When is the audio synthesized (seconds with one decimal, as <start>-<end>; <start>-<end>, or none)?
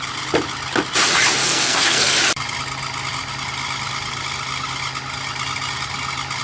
1.4-2.2